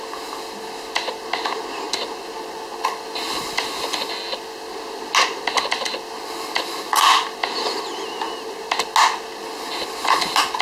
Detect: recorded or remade recorded